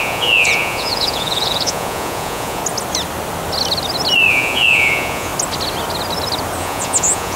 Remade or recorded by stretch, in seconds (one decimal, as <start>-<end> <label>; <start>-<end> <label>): 0.0-2.6 remade; 2.6-4.3 recorded; 4.3-5.3 remade; 5.3-6.6 recorded; 6.6-7.4 remade